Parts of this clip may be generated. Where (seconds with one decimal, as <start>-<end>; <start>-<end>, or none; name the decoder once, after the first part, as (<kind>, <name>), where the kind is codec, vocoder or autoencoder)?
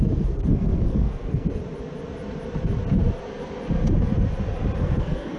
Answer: 0.0-1.6 (codec, SNAC); 4.8-5.4